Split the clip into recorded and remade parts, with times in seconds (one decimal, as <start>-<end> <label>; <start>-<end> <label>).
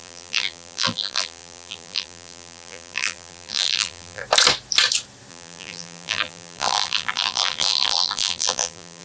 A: 0.0-4.2 remade; 4.2-5.3 recorded; 5.3-9.0 remade